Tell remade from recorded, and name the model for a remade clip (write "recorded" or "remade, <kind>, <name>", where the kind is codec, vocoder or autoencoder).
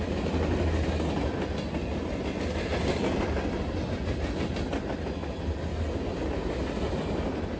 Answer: recorded